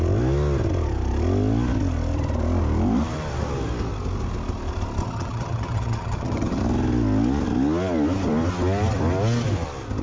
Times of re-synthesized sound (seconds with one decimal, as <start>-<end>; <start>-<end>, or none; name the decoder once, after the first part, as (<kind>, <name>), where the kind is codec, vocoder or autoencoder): 5.0-6.6 (vocoder, HiFi-GAN)